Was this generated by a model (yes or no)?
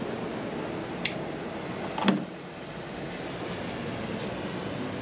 no